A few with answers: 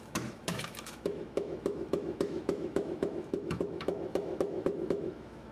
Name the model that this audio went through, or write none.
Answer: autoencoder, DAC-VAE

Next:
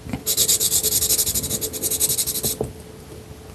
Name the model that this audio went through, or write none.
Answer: none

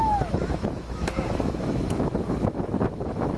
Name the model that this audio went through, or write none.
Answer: autoencoder, DAC-VAE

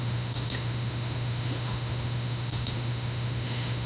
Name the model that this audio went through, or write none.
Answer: autoencoder, DAC-VAE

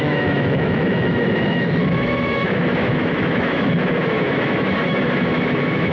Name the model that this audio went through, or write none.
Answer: autoencoder, DAC-VAE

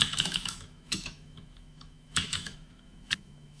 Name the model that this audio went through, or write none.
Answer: autoencoder, DAC-VAE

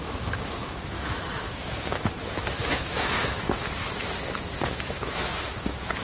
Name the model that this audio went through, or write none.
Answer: autoencoder, DAC-VAE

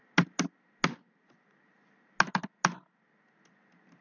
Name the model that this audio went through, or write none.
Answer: none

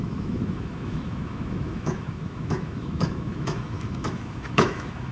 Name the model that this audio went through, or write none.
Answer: autoencoder, DAC-VAE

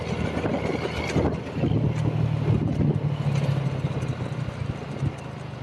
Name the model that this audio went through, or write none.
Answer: none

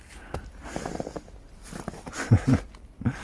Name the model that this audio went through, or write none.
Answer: none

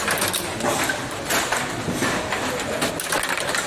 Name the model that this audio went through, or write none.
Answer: none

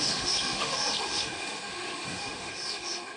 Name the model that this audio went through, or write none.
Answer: autoencoder, DAC-VAE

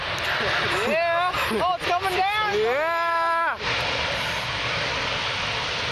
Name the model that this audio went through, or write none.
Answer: none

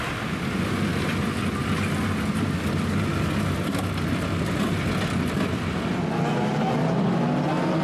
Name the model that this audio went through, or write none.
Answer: none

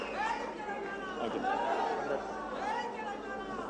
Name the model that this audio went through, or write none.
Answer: none